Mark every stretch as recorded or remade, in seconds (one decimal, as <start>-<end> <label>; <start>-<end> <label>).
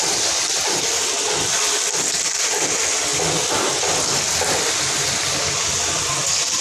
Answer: 0.0-6.6 recorded